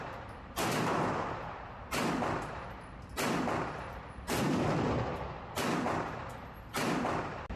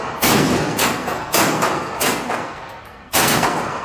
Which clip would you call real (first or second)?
first